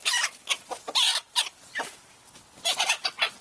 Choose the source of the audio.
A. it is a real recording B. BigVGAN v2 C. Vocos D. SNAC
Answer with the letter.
A